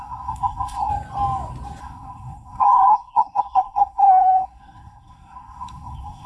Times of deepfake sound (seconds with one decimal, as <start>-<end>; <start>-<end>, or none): 0.0-0.9; 1.8-6.3